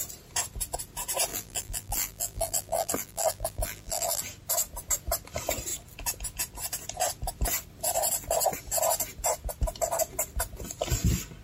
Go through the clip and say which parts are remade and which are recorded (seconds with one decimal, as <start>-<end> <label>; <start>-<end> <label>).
0.0-1.3 recorded; 1.3-4.2 remade; 4.2-11.4 recorded